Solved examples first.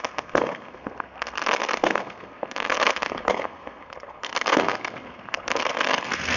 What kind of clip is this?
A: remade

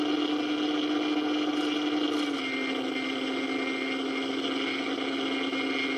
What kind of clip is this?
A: recorded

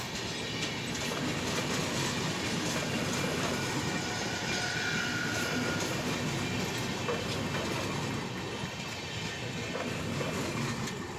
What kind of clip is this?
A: recorded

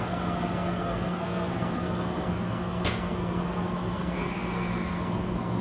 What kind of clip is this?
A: remade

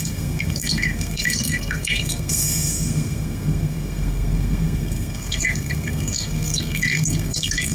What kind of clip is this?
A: remade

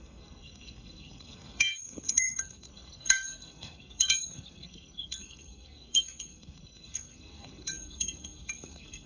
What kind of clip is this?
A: remade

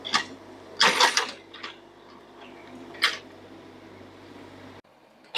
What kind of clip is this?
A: recorded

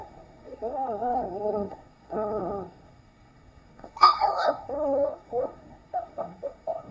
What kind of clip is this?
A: remade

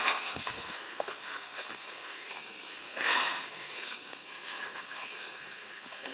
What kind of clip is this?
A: remade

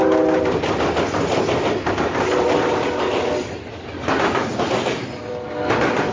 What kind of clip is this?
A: recorded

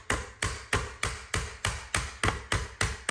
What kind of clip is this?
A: recorded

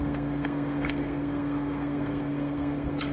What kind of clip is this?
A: remade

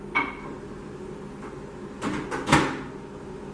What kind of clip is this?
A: recorded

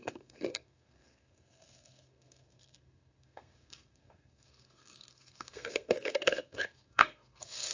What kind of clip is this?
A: remade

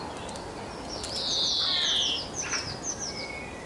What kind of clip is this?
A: recorded